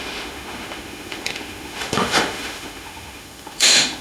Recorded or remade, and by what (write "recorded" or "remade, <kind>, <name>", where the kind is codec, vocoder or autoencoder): remade, autoencoder, DAC-VAE